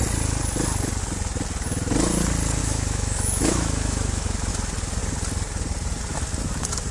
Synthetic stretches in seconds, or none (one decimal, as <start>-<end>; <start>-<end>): 2.6-4.5